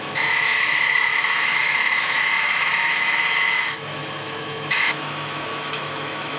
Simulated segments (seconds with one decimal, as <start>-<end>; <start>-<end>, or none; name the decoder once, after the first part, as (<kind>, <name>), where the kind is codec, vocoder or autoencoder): 0.0-6.4 (autoencoder, DAC-VAE)